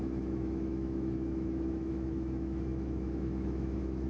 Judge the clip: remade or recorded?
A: remade